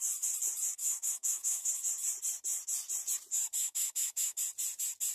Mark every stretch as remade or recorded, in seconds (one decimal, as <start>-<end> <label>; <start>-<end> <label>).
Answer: 0.0-0.8 recorded; 0.8-1.7 remade; 1.7-3.6 recorded; 3.6-4.4 remade; 4.4-5.1 recorded